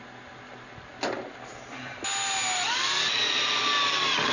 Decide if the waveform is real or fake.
real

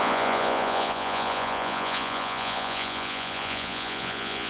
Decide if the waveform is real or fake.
fake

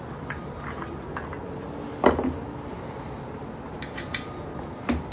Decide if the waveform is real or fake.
real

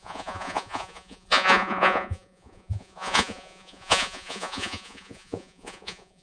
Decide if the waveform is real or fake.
fake